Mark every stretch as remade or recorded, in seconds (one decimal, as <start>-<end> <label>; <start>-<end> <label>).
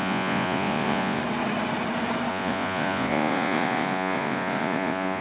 0.0-1.2 remade; 1.2-2.3 recorded; 2.3-5.2 remade